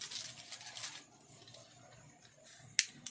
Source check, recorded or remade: recorded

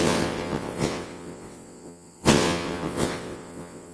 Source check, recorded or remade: remade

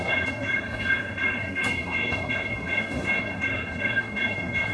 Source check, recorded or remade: remade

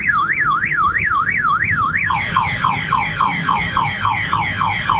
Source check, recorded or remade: remade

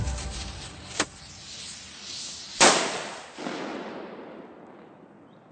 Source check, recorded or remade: recorded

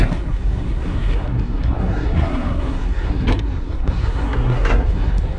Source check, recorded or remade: remade